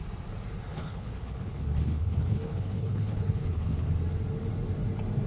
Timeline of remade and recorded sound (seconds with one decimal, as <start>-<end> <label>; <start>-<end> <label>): 0.0-0.7 recorded; 0.7-3.9 remade; 3.9-5.3 recorded